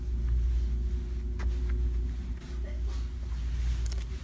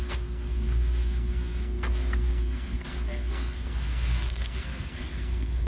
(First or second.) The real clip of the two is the first